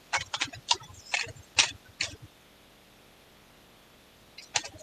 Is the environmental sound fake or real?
real